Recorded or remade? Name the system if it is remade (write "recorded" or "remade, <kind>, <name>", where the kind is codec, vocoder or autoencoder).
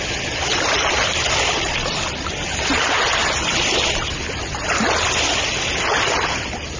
recorded